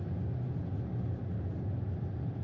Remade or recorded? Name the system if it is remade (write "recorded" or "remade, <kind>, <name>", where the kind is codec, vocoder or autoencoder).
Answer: recorded